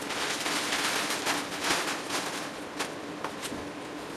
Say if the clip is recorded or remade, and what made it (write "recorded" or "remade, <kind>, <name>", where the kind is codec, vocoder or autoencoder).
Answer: recorded